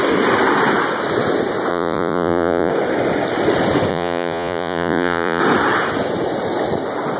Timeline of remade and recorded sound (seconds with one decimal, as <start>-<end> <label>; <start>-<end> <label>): 0.0-1.7 recorded; 1.7-2.7 remade; 2.7-3.9 recorded; 3.9-5.4 remade; 5.4-7.2 recorded